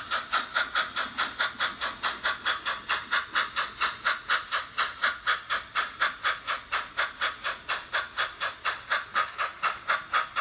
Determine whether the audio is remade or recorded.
recorded